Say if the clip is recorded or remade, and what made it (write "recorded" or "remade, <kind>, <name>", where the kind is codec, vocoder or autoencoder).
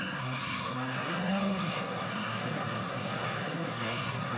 remade, codec, SNAC